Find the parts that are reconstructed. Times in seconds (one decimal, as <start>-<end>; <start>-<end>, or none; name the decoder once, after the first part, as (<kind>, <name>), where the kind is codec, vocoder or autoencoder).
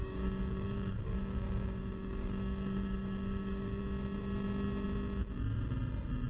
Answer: 0.0-3.8 (codec, DAC)